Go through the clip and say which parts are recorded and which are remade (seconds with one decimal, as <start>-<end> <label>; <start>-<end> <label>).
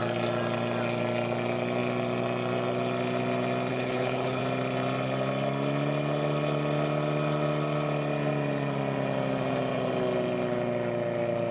0.0-3.7 recorded; 3.7-4.4 remade; 4.4-11.5 recorded